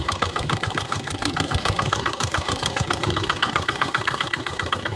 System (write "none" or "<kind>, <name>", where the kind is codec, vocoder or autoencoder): codec, SNAC